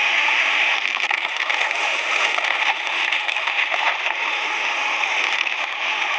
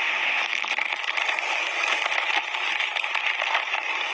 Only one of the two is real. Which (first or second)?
second